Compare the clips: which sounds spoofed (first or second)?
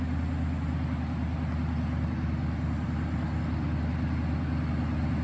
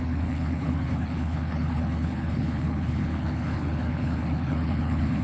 second